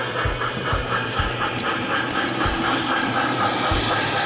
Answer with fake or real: fake